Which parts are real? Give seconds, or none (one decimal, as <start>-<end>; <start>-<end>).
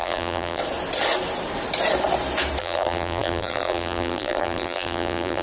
0.6-2.6